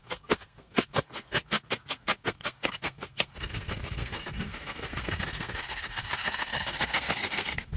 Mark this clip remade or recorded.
remade